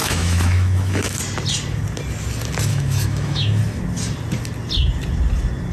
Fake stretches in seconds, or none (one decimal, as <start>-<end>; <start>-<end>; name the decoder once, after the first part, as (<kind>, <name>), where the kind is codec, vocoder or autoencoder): 0.0-1.2 (autoencoder, DAC-VAE); 2.7-3.6